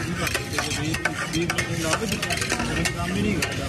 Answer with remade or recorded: recorded